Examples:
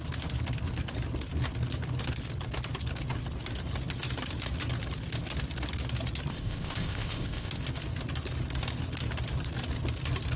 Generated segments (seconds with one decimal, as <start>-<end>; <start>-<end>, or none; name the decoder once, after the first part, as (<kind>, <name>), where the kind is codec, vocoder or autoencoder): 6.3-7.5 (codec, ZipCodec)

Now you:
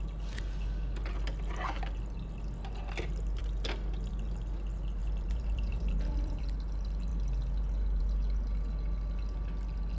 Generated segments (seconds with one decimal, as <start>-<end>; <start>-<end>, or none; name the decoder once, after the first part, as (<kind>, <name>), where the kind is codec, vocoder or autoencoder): 5.0-6.4 (vocoder, BigVGAN v2)

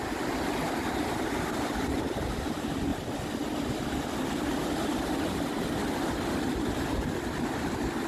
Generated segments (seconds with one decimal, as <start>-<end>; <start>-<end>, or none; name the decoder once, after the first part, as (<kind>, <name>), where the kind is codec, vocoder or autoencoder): none

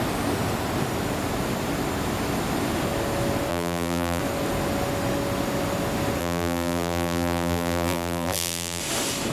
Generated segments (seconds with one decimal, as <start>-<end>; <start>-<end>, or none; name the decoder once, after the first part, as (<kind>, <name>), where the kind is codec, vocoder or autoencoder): 3.5-4.2 (vocoder, BigVGAN v2); 6.2-8.8

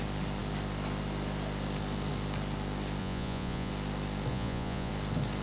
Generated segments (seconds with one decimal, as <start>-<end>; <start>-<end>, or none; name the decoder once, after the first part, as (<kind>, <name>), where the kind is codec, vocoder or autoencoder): 3.0-3.7 (vocoder, Vocos); 4.3-4.9

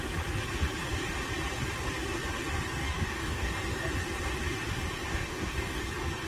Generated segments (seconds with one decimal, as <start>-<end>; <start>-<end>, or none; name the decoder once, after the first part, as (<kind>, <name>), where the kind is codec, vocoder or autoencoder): 2.8-3.5 (codec, DAC); 5.1-5.8

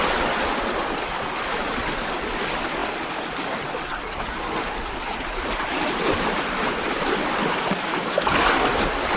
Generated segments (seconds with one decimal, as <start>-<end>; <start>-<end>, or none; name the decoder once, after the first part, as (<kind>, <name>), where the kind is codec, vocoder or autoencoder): none

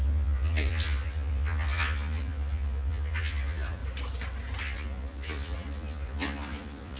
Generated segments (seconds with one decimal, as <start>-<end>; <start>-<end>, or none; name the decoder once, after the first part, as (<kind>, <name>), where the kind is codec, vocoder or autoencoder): 0.0-3.8 (vocoder, Vocos); 4.6-7.0